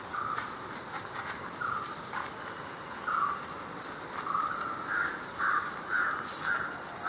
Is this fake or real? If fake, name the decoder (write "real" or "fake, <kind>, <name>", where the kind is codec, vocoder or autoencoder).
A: real